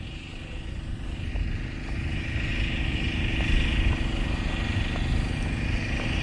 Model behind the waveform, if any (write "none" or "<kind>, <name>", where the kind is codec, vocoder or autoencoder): none